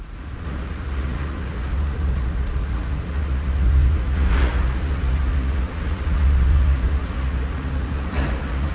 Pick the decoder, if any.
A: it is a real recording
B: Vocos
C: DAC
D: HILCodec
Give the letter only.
B